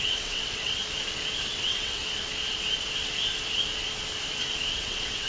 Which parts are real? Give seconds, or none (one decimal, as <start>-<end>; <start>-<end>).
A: 0.8-1.4; 2.0-4.7